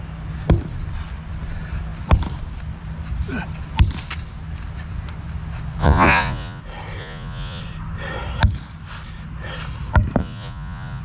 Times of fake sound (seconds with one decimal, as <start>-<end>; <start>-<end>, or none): 5.8-6.6; 7.0-7.6; 10.2-11.0